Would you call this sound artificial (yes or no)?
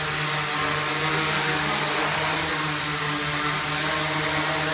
no